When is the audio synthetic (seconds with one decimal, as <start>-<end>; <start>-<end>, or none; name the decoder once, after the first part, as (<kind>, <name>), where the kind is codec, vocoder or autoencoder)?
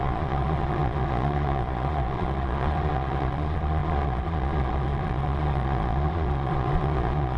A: 0.0-7.4 (vocoder, Vocos)